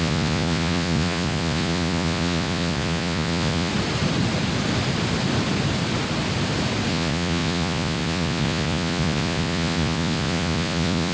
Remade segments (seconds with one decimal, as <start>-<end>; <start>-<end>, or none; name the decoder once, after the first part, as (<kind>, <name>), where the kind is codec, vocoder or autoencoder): 0.0-3.7 (vocoder, Vocos); 6.9-11.1